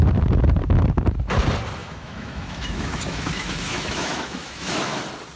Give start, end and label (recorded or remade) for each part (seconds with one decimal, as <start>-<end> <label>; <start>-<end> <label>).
0.0-1.8 recorded; 1.8-5.0 remade; 5.0-5.4 recorded